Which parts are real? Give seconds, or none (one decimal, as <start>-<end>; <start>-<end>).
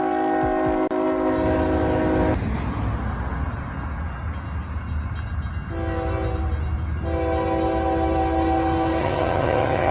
0.0-9.0